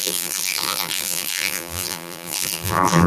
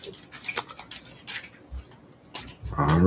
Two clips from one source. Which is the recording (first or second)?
second